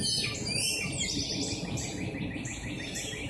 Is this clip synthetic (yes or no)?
no